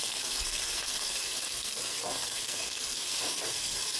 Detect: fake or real fake